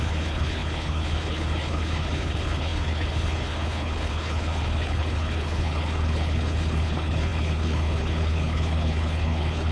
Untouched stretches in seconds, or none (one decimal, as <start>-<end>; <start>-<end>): none